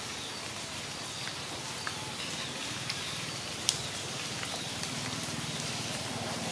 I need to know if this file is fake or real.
real